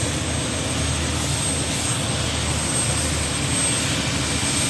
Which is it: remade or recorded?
recorded